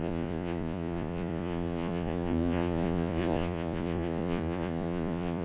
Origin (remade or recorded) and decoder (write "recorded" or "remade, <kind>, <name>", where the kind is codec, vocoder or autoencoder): remade, vocoder, Vocos